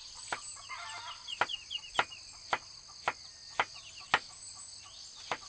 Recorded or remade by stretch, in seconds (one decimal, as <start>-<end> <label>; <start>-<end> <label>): 0.0-5.5 recorded